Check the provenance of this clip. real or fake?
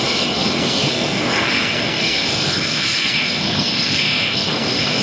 fake